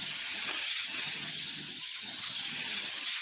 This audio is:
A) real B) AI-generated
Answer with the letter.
B